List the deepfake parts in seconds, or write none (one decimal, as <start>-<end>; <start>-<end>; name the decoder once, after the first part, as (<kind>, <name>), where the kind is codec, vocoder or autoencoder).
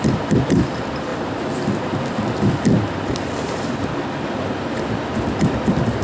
none